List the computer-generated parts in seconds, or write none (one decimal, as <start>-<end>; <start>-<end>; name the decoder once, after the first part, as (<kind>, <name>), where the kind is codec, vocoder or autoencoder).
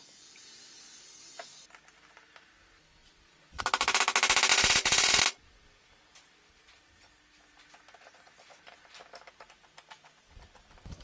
3.0-3.6 (vocoder, Vocos); 4.5-5.2